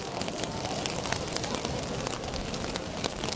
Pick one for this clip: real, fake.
real